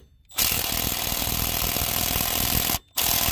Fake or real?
real